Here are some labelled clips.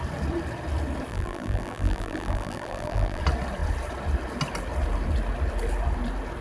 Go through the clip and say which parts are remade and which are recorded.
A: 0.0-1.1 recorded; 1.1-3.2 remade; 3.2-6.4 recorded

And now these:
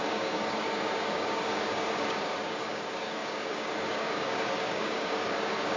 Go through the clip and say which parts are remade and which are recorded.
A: 0.0-5.8 remade

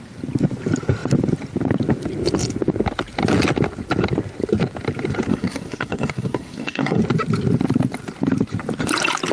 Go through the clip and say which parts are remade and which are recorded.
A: 0.0-5.3 recorded; 5.3-7.0 remade; 7.0-9.3 recorded

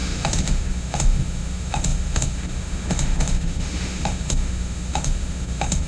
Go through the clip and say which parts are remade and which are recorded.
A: 0.0-5.9 remade

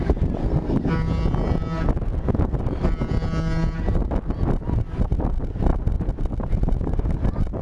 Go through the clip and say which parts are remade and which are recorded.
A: 0.0-0.4 recorded; 0.4-0.9 remade; 0.9-7.6 recorded